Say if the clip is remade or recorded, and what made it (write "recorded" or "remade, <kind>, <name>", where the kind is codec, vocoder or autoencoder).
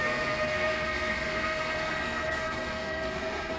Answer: remade, codec, SNAC